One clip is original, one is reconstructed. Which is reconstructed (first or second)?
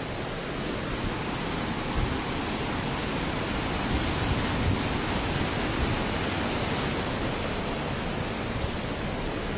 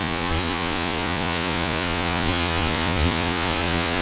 second